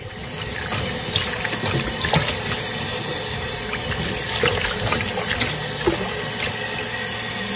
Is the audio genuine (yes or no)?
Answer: yes